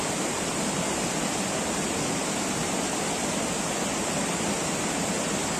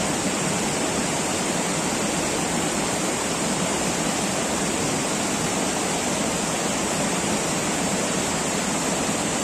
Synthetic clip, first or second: second